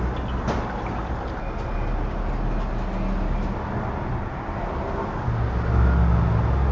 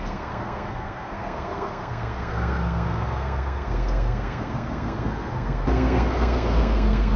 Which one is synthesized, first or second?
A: second